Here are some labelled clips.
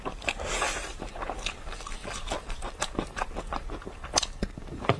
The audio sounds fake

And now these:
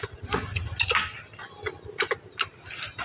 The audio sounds real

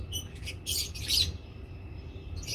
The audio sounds fake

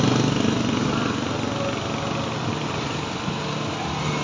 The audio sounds real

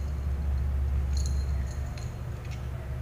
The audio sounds real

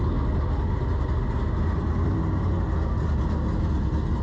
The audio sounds real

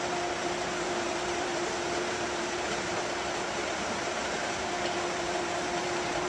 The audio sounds fake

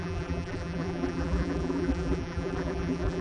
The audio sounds fake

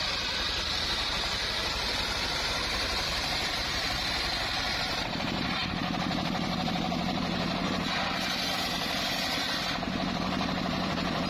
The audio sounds fake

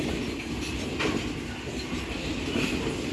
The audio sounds real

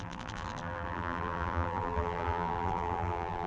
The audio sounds fake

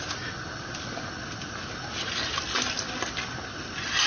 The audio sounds real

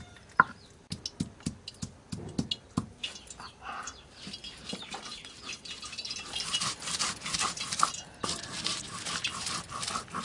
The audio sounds real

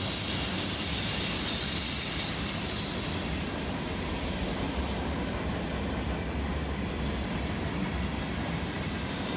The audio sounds real